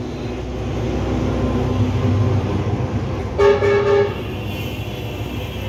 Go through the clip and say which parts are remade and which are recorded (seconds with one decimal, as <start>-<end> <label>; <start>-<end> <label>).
0.0-2.2 recorded; 2.2-3.2 remade; 3.2-5.7 recorded